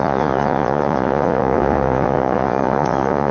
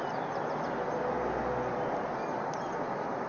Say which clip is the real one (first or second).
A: second